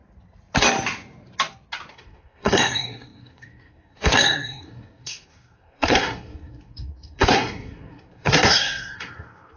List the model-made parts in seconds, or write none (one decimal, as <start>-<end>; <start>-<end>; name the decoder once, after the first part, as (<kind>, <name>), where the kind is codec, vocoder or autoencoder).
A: 1.9-9.6 (codec, SNAC)